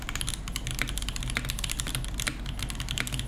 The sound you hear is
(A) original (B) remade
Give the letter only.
A